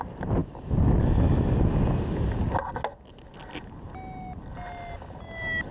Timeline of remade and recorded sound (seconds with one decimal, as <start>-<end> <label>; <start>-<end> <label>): 0.0-5.7 recorded